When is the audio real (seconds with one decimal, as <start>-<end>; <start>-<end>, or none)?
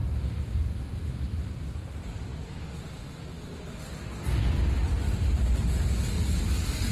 0.0-6.9